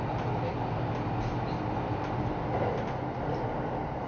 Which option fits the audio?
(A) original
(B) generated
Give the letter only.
A